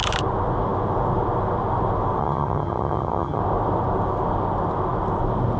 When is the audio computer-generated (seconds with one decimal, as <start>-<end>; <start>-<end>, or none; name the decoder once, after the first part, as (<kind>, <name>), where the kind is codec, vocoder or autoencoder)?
2.2-3.4 (vocoder, HiFi-GAN)